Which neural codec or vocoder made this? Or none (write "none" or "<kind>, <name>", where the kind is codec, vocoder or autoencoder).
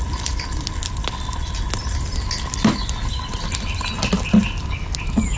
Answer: none